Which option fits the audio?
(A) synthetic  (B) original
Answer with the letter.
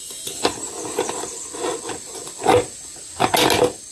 B